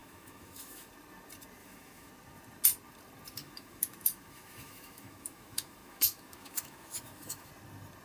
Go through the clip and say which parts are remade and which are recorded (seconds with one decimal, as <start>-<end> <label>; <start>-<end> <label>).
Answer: 0.0-0.9 remade; 0.9-1.6 recorded; 1.6-2.1 remade; 2.1-3.4 recorded; 3.4-7.5 remade; 7.5-8.0 recorded